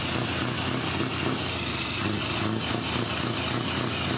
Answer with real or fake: real